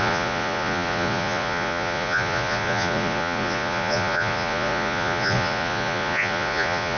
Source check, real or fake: fake